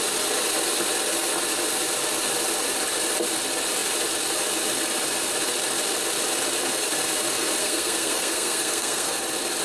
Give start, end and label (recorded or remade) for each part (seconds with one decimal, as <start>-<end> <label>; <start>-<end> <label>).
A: 0.0-7.6 recorded; 7.6-9.2 remade; 9.2-9.6 recorded